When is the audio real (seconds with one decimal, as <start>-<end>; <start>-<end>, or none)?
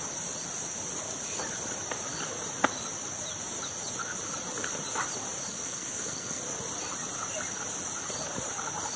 0.0-5.5; 6.4-9.0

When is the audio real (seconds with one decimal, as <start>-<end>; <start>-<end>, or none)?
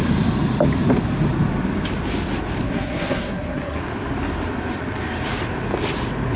0.0-2.6; 3.8-6.4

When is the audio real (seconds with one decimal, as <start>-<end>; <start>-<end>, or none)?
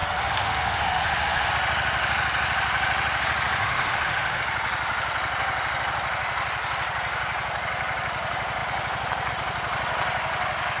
1.5-3.6; 4.4-10.8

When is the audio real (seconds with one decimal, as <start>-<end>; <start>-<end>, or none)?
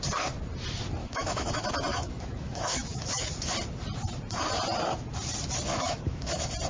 0.0-1.0; 1.5-1.9; 3.3-5.7; 6.3-6.7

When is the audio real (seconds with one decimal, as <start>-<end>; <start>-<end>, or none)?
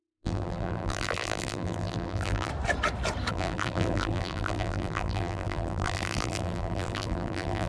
2.5-3.3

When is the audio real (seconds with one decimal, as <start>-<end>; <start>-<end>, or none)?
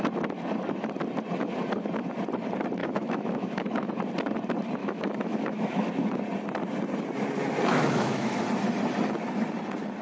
0.0-2.8; 3.9-4.8; 5.9-7.7; 8.4-10.0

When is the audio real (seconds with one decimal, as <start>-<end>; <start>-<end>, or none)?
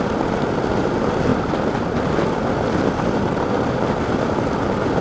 0.0-5.0